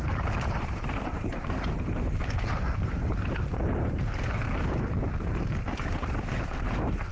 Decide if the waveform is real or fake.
fake